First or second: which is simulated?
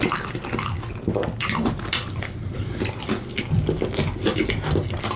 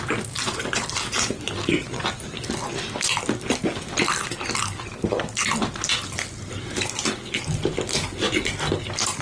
first